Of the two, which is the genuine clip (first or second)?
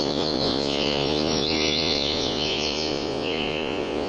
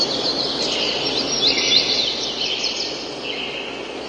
second